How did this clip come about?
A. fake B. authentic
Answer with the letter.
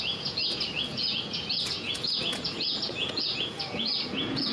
A